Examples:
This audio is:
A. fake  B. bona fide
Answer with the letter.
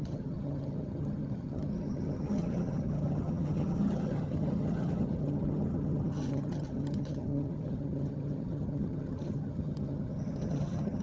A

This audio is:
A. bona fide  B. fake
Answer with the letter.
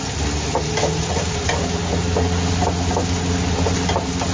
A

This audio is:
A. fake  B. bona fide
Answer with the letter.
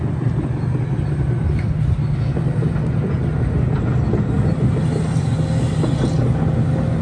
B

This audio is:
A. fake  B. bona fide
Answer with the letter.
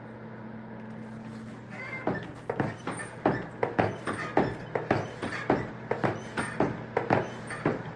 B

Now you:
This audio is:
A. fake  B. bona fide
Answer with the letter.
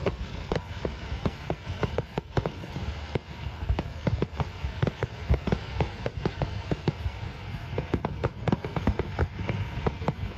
A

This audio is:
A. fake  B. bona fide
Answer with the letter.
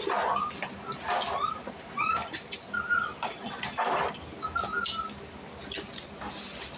B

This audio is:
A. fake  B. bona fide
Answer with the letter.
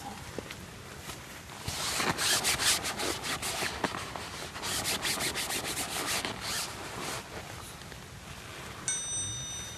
B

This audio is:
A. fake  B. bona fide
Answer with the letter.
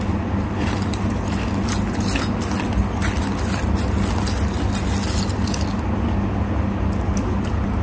B